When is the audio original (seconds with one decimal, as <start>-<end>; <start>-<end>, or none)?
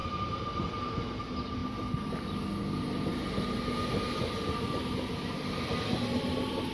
0.8-1.6; 2.1-6.7